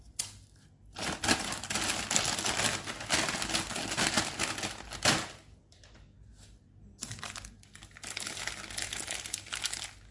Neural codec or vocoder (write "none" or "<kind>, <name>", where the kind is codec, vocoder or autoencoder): none